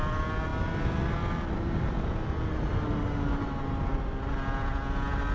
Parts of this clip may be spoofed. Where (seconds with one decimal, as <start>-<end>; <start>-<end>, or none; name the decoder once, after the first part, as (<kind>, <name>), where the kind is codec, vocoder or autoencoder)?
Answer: none